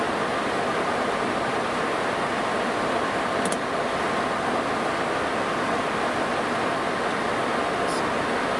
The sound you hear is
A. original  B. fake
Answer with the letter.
A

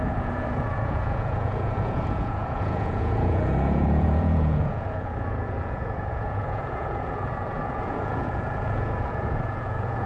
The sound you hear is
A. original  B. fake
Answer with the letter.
B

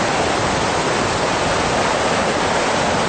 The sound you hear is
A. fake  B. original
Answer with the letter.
B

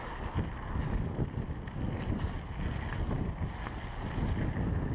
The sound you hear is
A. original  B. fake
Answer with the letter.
A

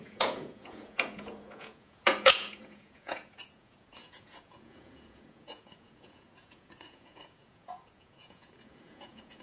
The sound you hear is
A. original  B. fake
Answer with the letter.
B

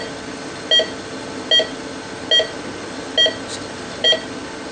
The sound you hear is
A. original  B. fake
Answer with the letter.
A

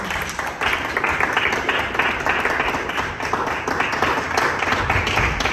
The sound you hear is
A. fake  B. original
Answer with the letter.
B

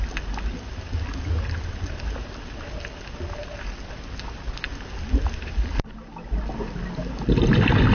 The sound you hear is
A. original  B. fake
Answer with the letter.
A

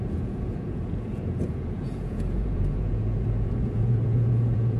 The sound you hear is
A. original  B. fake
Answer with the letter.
B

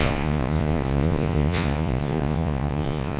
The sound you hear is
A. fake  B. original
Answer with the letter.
A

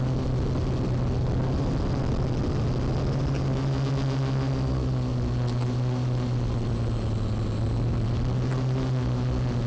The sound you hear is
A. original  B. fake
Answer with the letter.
A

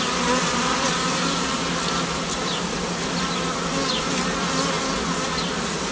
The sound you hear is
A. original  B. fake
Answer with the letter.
A